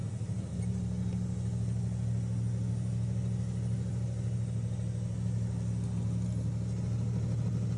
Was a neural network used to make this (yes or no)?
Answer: no